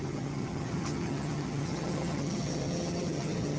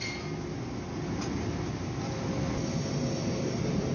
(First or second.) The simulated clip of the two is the first